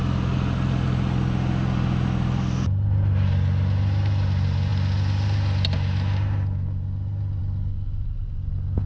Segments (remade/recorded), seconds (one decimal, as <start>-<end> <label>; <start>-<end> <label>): 0.0-8.9 recorded